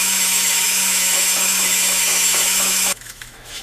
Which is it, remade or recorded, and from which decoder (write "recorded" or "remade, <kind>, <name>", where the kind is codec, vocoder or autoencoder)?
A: remade, autoencoder, DAC-VAE